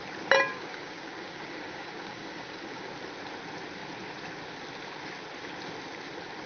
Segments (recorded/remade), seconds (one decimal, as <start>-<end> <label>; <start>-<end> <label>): 0.0-0.5 recorded; 0.5-2.9 remade; 2.9-6.5 recorded